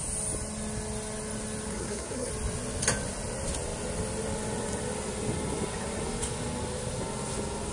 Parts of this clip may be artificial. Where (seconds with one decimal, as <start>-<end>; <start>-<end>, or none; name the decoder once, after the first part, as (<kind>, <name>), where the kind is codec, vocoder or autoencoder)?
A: 1.7-2.3 (codec, SNAC)